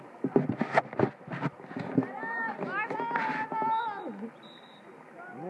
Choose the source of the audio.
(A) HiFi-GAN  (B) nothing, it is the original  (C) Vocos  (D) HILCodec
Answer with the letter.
B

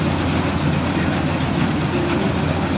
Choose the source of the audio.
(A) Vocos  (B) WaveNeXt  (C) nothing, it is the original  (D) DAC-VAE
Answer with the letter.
C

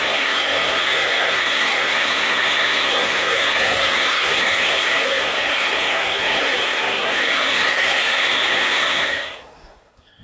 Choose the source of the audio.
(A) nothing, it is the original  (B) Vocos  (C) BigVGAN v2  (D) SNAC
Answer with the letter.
D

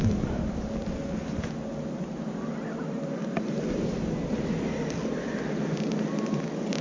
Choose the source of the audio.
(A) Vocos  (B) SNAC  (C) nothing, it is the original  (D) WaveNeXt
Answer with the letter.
C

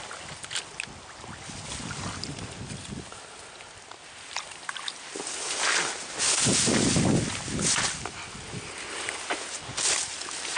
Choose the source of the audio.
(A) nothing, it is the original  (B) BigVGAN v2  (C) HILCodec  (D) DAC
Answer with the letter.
A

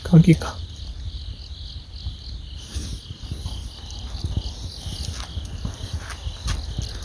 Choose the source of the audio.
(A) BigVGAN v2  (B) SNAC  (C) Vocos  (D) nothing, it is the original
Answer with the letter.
D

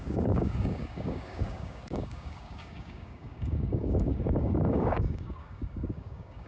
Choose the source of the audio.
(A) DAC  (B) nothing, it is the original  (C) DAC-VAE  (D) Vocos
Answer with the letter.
A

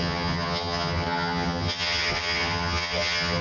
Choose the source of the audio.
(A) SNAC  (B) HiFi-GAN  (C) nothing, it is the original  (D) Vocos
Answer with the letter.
B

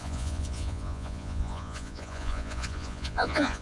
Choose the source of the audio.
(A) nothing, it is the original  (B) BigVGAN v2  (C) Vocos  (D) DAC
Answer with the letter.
C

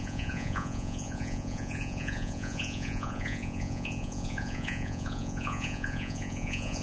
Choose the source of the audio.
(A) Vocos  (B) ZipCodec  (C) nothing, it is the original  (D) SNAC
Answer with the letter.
A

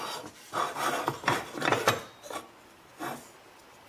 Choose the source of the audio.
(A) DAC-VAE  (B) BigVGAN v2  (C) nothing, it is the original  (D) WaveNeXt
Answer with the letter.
C